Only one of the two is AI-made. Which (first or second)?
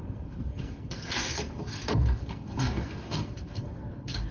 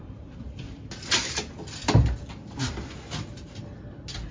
first